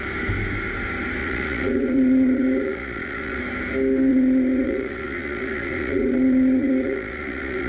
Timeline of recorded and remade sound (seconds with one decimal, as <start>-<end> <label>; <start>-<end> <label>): 0.0-1.2 recorded; 1.2-3.4 remade; 3.4-4.1 recorded; 4.1-7.7 remade